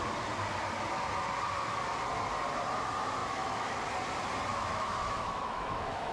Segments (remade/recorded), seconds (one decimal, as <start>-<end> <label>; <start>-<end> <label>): 0.0-3.2 recorded; 3.2-3.8 remade; 3.8-4.5 recorded; 4.5-6.1 remade